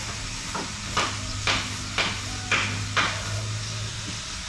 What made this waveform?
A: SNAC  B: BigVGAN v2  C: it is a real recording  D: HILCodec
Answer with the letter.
C